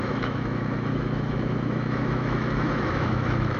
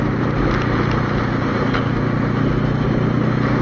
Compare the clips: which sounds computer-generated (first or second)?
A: first